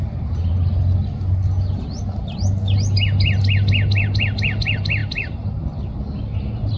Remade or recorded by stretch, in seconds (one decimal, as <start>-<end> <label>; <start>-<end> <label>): 0.0-6.8 recorded